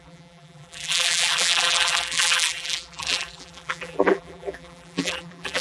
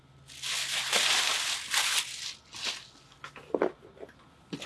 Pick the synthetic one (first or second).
first